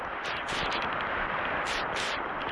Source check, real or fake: real